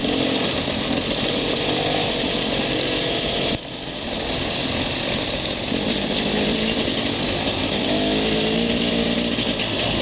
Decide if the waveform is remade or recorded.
recorded